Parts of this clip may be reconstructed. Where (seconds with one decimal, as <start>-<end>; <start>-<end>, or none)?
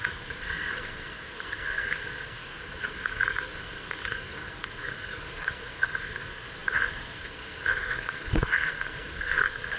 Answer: 0.0-9.8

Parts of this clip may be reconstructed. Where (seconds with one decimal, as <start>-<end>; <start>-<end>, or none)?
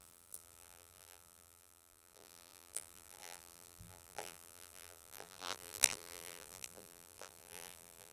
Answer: 0.0-8.1